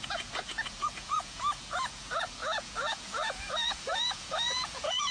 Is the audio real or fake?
fake